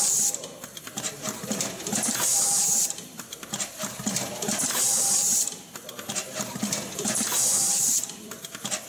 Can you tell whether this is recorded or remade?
recorded